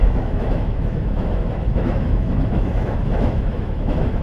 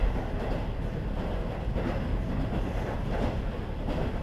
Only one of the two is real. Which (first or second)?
second